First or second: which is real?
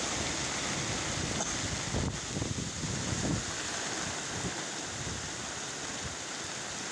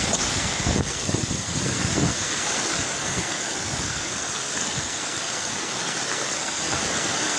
first